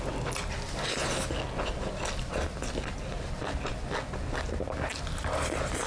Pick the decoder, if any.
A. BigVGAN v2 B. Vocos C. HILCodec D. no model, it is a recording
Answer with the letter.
D